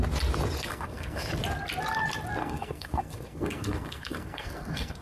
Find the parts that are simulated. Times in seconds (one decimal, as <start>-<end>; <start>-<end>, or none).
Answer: 0.7-1.2; 2.4-5.0